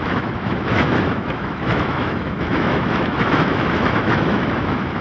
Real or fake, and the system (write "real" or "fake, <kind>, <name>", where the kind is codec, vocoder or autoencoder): fake, autoencoder, DAC-VAE